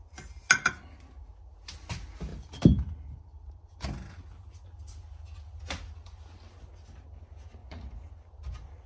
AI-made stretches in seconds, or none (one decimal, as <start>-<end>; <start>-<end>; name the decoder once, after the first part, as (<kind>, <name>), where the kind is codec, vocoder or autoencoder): 7.6-8.1 (vocoder, Vocos)